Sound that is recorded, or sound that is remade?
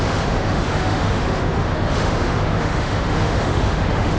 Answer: remade